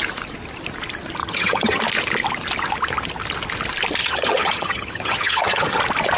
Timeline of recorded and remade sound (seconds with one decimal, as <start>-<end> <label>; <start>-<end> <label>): 0.0-1.2 recorded; 1.2-1.8 remade; 1.8-4.0 recorded; 4.0-5.8 remade; 5.8-6.2 recorded